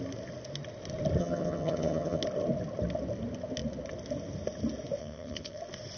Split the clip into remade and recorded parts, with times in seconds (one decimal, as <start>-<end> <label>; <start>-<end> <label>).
0.0-1.2 recorded; 1.2-2.2 remade; 2.2-5.0 recorded; 5.0-5.6 remade; 5.6-6.0 recorded

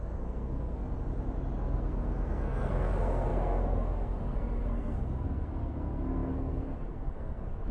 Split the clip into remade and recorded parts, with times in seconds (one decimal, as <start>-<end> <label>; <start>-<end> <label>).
0.0-0.8 remade; 0.8-1.6 recorded; 1.6-7.7 remade